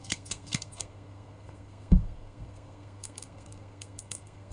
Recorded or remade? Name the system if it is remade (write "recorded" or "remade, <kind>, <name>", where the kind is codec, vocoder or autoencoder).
remade, codec, SNAC